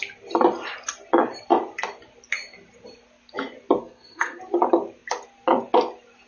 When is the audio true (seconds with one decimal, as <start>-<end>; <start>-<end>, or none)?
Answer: 0.0-3.8; 4.4-6.3